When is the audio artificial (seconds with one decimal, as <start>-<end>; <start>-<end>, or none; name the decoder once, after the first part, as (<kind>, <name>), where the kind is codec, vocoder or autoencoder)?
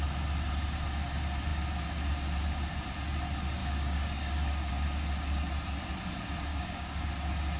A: 3.6-4.7 (codec, DAC); 6.5-7.1